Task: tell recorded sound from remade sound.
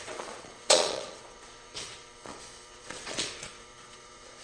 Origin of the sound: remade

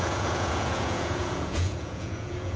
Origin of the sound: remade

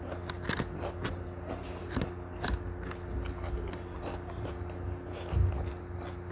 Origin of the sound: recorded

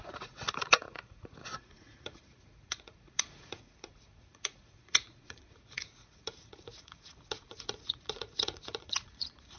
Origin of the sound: remade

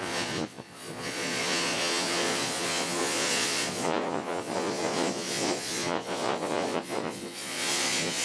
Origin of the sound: remade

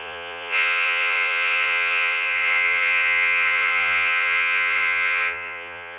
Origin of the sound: remade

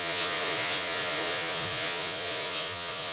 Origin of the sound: remade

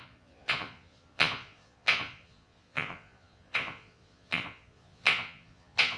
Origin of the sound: remade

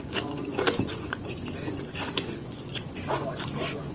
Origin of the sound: remade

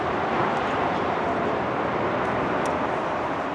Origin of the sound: recorded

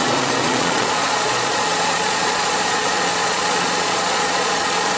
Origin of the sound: remade